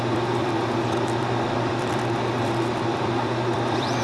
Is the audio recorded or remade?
remade